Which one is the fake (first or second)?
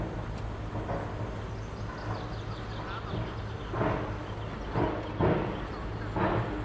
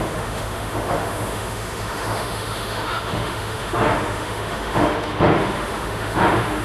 second